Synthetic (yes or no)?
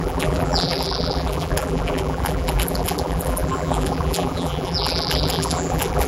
yes